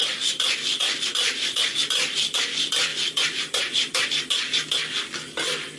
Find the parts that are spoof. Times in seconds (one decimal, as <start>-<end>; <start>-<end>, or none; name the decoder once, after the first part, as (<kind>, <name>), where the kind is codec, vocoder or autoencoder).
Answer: 0.7-1.7 (vocoder, BigVGAN v2); 2.9-4.1